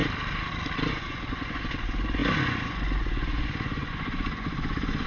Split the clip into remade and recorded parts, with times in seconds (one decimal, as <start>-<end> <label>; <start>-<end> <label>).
0.0-0.9 recorded; 0.9-5.1 remade